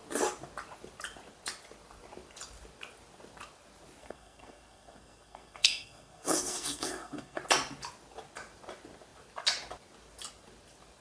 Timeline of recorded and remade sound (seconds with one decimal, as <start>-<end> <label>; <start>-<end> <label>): 0.0-4.0 recorded; 4.0-7.4 remade; 7.4-11.0 recorded